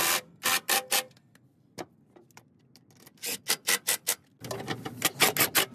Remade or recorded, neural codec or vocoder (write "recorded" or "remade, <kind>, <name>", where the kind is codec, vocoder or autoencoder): recorded